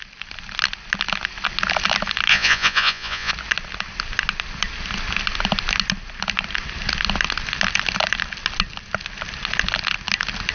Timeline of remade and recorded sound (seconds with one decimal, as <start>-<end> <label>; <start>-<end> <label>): 0.0-2.3 recorded; 2.3-3.3 remade; 3.3-10.5 recorded